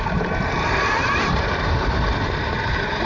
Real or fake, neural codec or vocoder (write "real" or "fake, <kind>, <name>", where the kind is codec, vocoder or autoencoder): fake, vocoder, BigVGAN v2